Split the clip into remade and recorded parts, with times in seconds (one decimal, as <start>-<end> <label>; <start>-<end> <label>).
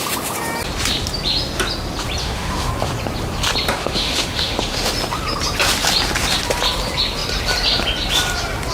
0.0-2.2 recorded; 2.2-2.7 remade; 2.7-3.8 recorded; 3.8-4.9 remade; 4.9-8.7 recorded